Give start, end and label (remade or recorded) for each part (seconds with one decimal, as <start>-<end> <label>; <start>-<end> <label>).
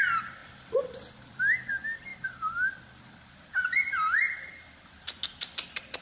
0.0-0.4 recorded; 0.4-1.7 remade; 1.7-6.0 recorded